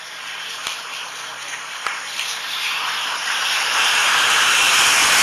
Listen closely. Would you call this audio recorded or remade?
remade